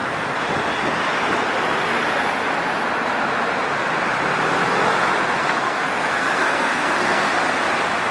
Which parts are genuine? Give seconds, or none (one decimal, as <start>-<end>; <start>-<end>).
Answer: 0.0-5.4; 7.3-8.1